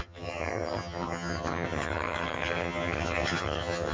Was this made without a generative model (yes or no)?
no